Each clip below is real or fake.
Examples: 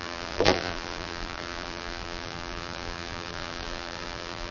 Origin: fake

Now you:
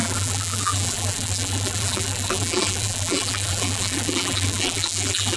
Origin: fake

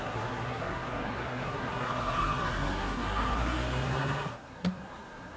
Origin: fake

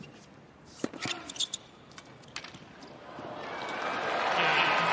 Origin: real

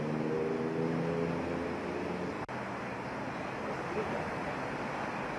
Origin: real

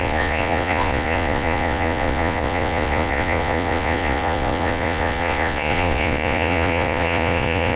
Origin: fake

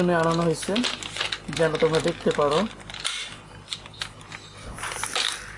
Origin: real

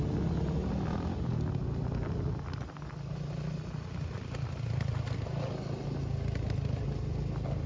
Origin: real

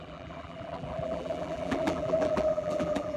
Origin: fake